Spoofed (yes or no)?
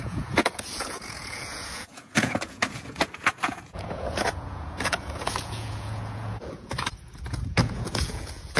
yes